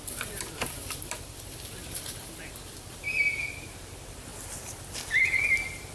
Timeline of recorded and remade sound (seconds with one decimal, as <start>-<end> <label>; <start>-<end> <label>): 0.0-5.9 remade

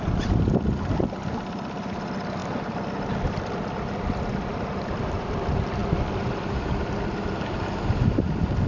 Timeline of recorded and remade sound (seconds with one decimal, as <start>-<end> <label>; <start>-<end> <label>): 0.0-8.7 recorded

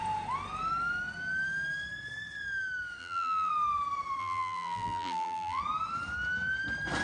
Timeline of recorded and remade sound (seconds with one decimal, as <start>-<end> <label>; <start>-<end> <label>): 0.0-3.0 recorded; 3.0-3.5 remade; 3.5-4.2 recorded; 4.2-5.6 remade; 5.6-7.0 recorded

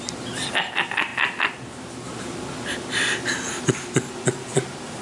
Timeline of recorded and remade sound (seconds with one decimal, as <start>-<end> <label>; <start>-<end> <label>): 0.0-5.0 recorded

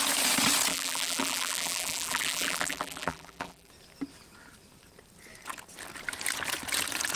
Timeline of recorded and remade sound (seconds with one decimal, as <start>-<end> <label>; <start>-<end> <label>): 0.0-0.7 recorded; 0.7-3.7 remade; 3.7-7.2 recorded

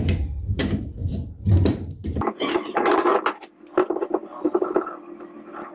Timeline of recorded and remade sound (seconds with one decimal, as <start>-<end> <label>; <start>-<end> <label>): 0.0-1.0 recorded; 1.0-1.5 remade; 1.5-2.0 recorded; 2.0-3.1 remade; 3.1-5.7 recorded

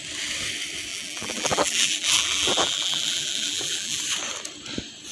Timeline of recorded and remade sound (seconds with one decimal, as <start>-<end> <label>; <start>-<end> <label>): 0.0-0.9 recorded; 0.9-4.0 remade; 4.0-5.1 recorded

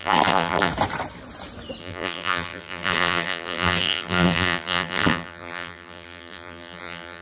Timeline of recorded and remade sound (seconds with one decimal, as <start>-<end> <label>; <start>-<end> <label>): 0.0-0.7 remade; 0.7-1.8 recorded; 1.8-7.2 remade